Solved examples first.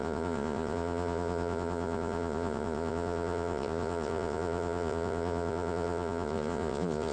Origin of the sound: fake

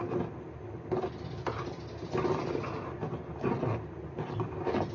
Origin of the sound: real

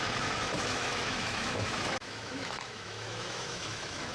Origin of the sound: fake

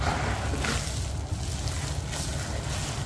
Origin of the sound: real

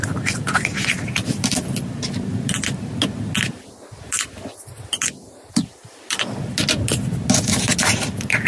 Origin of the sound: real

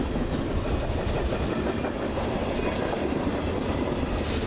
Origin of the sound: real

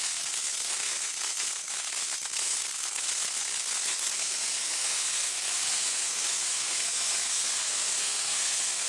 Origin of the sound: fake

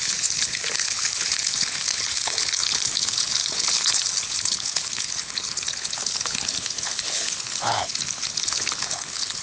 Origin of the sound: fake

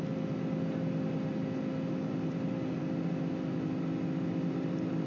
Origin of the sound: real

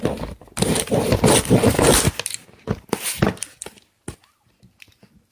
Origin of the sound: real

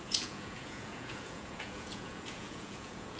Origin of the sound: fake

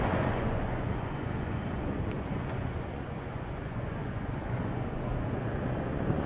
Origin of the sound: fake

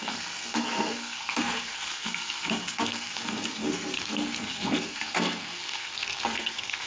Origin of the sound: fake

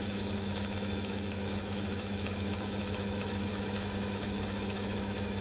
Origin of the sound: fake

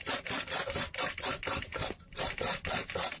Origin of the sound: real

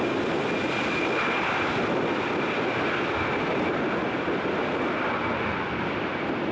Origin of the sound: real